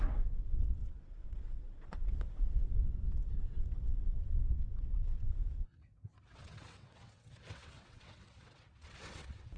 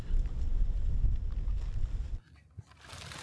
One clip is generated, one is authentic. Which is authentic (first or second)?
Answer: second